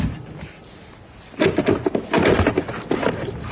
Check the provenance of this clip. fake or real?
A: real